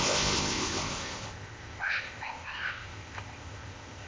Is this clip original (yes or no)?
no